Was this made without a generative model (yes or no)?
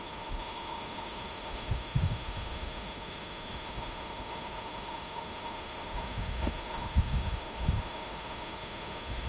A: no